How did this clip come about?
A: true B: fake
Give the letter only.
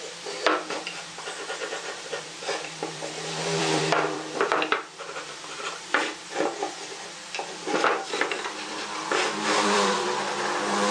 B